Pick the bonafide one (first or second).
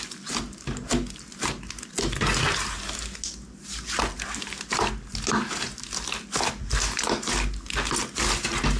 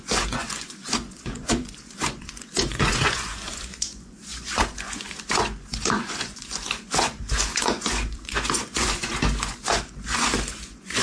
first